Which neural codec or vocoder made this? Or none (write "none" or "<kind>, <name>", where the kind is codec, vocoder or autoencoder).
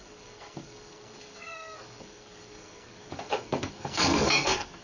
codec, SNAC